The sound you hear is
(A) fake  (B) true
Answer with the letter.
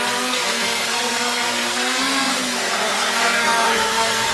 A